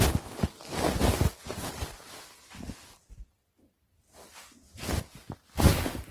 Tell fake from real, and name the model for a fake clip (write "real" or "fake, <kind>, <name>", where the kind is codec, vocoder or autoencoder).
real